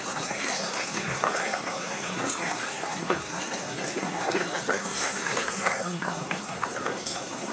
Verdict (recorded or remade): remade